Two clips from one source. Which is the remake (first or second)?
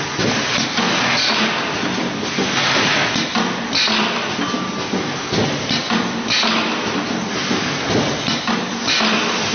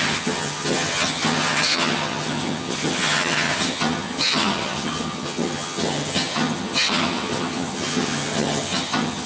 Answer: second